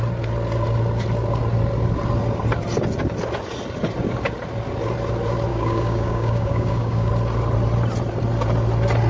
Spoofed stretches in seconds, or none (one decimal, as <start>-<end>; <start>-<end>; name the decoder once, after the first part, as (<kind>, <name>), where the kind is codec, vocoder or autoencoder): 5.5-7.1 (codec, DAC)